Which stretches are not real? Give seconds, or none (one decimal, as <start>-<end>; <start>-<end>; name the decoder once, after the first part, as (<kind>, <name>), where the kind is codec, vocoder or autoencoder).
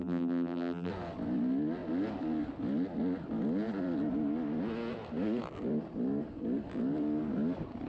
0.0-0.9 (vocoder, BigVGAN v2)